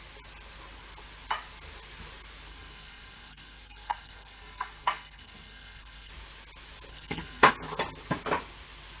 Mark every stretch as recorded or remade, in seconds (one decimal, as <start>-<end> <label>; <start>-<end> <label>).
0.0-2.5 recorded; 2.5-6.1 remade; 6.1-6.9 recorded; 6.9-7.5 remade; 7.5-9.0 recorded